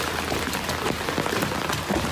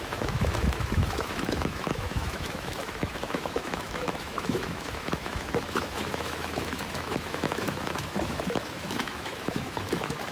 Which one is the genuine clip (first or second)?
first